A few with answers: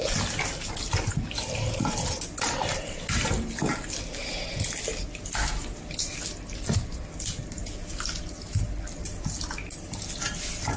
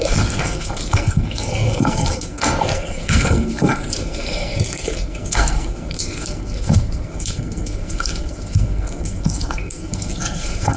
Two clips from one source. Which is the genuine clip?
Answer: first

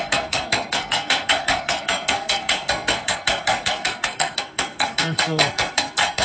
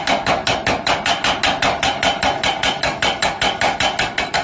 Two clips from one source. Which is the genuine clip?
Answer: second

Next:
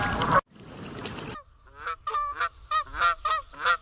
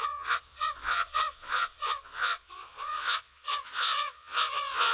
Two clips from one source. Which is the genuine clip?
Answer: first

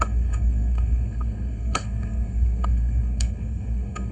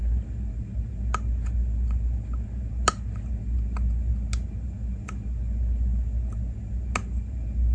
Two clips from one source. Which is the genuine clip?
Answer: second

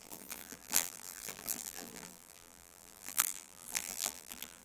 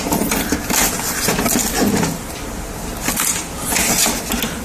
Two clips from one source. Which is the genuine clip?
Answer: second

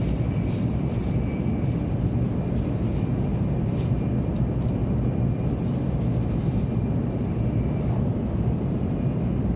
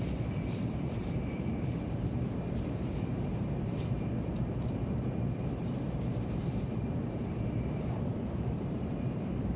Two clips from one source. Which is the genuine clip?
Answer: first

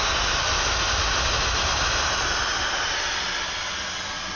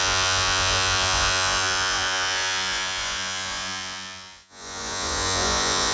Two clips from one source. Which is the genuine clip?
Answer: first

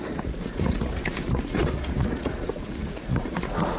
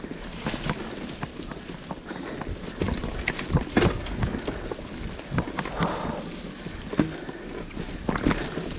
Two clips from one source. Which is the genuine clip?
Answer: second